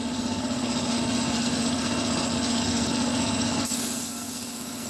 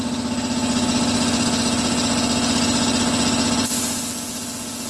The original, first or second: second